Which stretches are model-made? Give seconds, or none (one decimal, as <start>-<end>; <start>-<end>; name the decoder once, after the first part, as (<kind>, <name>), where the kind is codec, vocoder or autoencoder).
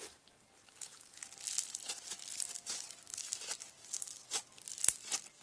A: none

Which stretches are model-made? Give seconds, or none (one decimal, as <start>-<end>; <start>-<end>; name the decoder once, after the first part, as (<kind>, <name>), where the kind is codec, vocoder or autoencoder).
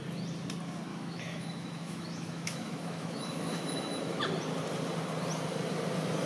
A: 0.9-4.2 (autoencoder, DAC-VAE)